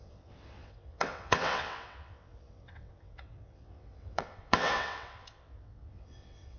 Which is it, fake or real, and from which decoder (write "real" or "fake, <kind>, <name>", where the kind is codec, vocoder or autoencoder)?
fake, vocoder, WaveNeXt